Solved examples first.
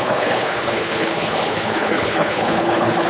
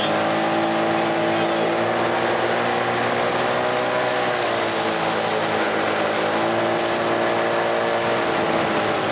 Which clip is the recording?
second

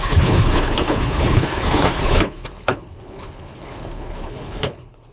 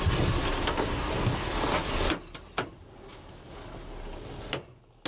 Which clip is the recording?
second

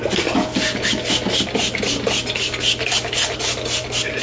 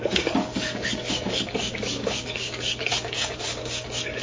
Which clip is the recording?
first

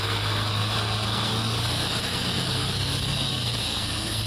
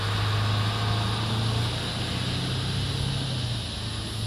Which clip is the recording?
second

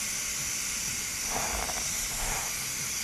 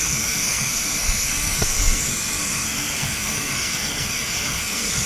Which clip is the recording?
first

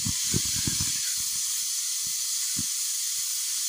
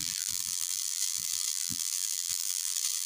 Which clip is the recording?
first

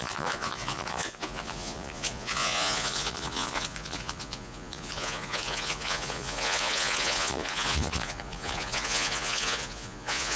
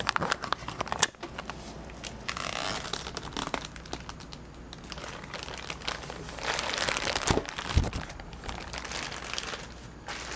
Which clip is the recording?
second